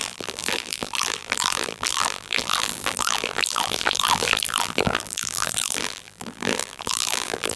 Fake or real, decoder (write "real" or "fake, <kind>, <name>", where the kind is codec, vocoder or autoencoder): fake, vocoder, BigVGAN v2